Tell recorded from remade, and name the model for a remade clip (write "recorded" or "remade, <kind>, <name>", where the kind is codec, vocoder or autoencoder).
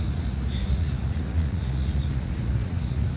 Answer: remade, vocoder, Vocos